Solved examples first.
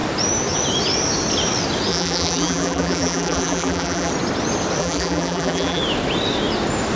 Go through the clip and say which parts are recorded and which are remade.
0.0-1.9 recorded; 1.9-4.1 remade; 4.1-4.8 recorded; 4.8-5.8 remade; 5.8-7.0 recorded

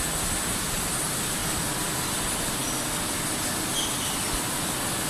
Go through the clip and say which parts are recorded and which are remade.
0.0-5.1 recorded

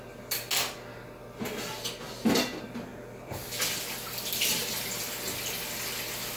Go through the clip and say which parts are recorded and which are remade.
0.0-6.4 recorded

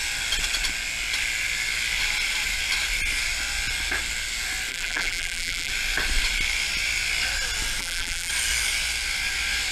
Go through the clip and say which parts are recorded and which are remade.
0.0-4.7 recorded; 4.7-5.7 remade; 5.7-7.8 recorded; 7.8-8.3 remade; 8.3-9.7 recorded

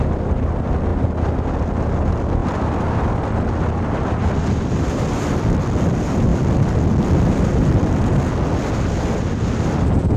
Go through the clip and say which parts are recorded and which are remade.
0.0-2.4 recorded; 2.4-5.4 remade; 5.4-6.3 recorded; 6.3-8.1 remade; 8.1-10.2 recorded

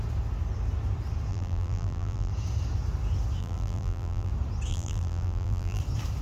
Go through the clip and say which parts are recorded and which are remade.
0.0-1.3 recorded; 1.3-2.3 remade; 2.3-3.4 recorded; 3.4-4.3 remade; 4.3-4.7 recorded; 4.7-5.8 remade; 5.8-6.2 recorded